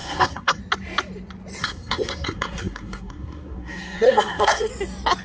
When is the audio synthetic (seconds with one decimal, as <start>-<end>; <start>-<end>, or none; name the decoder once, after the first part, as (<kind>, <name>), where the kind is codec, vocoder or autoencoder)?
0.0-0.6 (codec, SNAC); 1.6-4.7